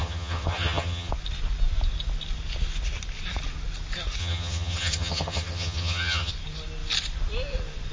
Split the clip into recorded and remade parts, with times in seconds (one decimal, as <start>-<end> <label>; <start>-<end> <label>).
0.0-1.1 remade; 1.1-4.2 recorded; 4.2-6.3 remade; 6.3-7.9 recorded